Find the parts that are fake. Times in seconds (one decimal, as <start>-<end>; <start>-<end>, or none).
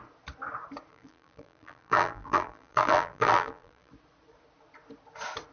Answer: 0.9-3.9